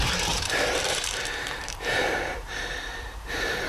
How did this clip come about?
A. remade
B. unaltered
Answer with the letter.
A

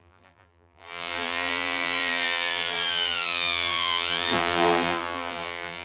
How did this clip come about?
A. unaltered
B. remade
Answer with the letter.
B